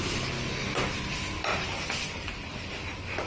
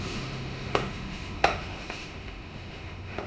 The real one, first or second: first